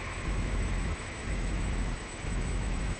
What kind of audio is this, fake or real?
fake